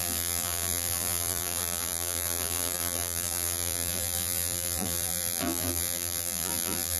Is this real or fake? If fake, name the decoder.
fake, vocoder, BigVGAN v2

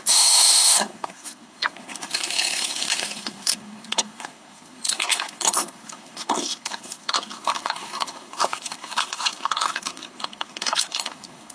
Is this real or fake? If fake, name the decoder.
fake, codec, SNAC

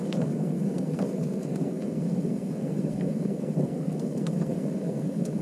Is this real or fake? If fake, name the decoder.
fake, codec, SNAC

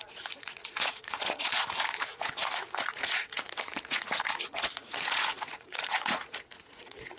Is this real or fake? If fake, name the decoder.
fake, vocoder, Vocos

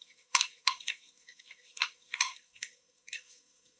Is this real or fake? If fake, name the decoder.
fake, codec, SNAC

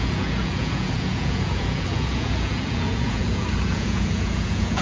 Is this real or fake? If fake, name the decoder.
fake, vocoder, Vocos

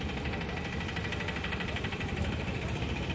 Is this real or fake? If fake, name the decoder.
fake, vocoder, BigVGAN v2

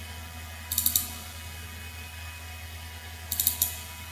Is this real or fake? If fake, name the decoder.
real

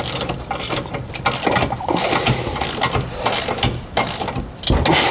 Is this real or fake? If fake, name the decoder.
real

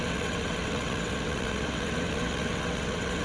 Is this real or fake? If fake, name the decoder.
fake, vocoder, WaveNeXt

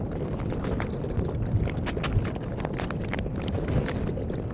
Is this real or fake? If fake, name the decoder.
real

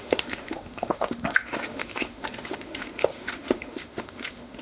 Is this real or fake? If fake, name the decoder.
fake, autoencoder, DAC-VAE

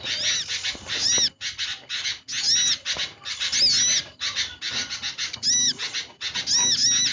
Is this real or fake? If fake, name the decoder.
real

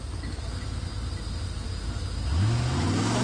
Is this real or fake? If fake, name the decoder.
real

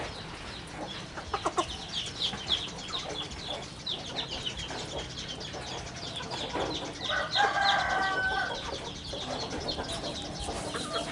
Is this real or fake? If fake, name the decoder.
real